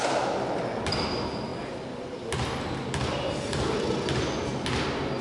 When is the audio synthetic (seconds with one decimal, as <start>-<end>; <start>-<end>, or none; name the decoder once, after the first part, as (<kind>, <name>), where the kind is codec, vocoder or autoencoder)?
none